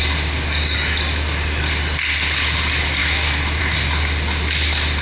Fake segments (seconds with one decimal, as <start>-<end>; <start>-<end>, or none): 3.0-3.6